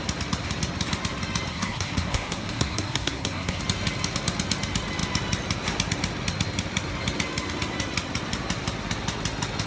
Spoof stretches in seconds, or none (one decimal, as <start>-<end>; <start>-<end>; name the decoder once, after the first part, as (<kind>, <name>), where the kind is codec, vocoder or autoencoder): 1.5-3.6 (codec, SNAC)